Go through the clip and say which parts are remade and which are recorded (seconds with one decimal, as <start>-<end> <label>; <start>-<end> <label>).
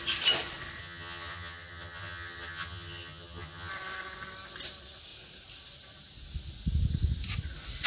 0.0-0.8 recorded; 0.8-3.7 remade; 3.7-7.9 recorded